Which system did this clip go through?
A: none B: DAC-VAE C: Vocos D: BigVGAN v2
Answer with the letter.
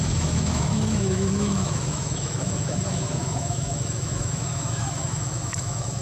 B